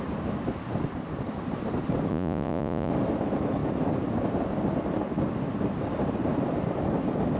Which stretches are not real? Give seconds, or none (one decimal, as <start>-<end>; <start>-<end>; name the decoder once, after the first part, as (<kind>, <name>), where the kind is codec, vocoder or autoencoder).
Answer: 2.1-2.9 (vocoder, Vocos)